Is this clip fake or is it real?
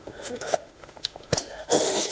fake